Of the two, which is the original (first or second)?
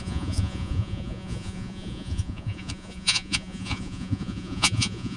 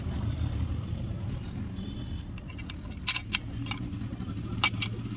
second